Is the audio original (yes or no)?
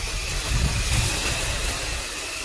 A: yes